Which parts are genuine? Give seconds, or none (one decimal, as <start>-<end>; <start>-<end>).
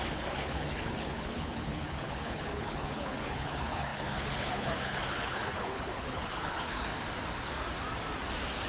6.9-8.7